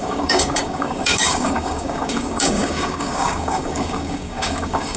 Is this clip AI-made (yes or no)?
yes